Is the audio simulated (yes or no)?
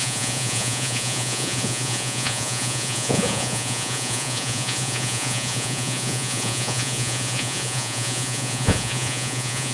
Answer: yes